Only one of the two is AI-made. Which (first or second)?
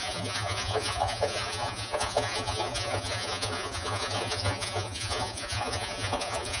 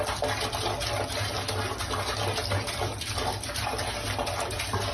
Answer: first